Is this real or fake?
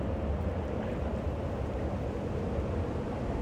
real